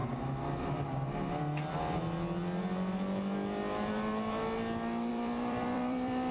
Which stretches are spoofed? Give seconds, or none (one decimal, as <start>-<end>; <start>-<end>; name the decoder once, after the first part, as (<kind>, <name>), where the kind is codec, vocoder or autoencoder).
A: 5.1-6.3 (vocoder, BigVGAN v2)

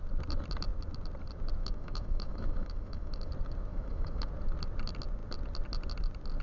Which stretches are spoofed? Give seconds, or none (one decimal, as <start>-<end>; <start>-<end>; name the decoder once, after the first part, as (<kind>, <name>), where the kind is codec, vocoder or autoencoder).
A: 1.6-3.3 (autoencoder, DAC-VAE); 3.7-4.3